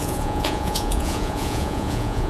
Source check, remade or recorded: remade